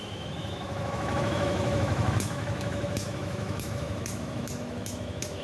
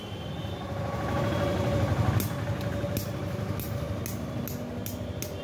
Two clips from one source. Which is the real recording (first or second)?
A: second